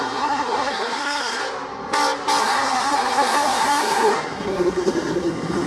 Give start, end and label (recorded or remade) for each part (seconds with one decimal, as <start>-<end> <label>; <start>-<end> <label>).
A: 0.0-1.4 remade; 1.4-2.4 recorded; 2.4-5.7 remade